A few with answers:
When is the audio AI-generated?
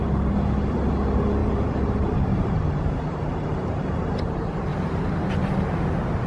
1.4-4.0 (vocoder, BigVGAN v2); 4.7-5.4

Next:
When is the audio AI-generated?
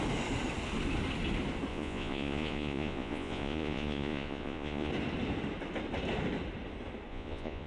1.7-4.9 (vocoder, Vocos); 7.1-7.7